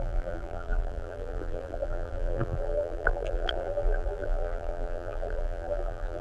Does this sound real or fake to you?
fake